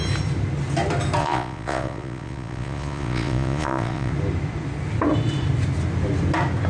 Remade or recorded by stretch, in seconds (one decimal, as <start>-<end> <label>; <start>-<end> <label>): 0.0-1.2 recorded; 1.2-4.1 remade; 4.1-6.7 recorded